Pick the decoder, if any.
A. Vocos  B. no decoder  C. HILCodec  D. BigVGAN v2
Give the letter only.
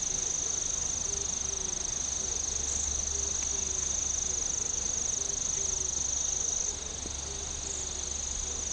B